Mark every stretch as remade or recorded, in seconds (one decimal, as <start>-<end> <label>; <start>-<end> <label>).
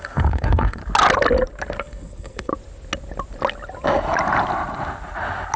0.0-0.8 remade; 0.8-1.8 recorded; 1.8-2.5 remade; 2.5-5.6 recorded